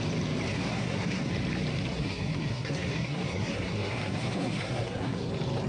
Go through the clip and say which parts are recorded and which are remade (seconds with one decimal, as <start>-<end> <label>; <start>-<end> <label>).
0.0-0.5 recorded; 0.5-1.3 remade; 1.3-1.9 recorded; 1.9-5.3 remade; 5.3-5.7 recorded